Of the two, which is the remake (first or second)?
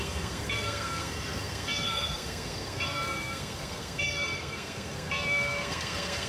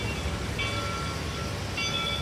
first